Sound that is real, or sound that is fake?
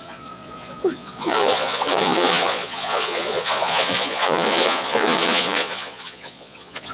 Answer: fake